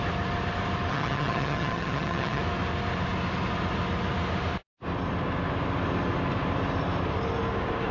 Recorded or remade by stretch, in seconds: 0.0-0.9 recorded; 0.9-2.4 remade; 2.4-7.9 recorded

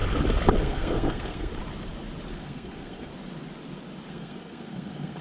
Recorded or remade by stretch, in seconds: 0.0-0.6 recorded; 0.6-1.5 remade; 1.5-2.3 recorded; 2.3-3.1 remade; 3.1-4.1 recorded; 4.1-5.2 remade